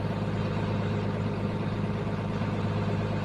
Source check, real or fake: real